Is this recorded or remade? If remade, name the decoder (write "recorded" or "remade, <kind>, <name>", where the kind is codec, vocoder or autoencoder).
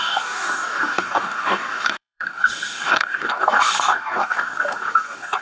remade, codec, DAC